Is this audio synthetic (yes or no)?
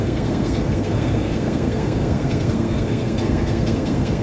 yes